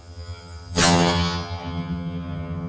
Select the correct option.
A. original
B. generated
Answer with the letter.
B